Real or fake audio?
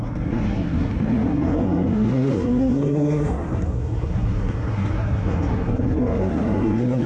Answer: fake